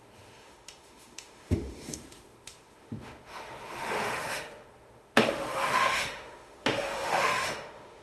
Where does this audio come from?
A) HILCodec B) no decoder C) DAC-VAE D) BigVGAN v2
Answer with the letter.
C